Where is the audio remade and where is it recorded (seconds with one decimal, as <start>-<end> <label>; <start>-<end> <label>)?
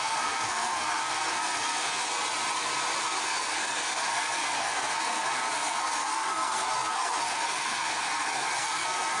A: 0.0-2.1 remade; 2.1-3.0 recorded; 3.0-9.2 remade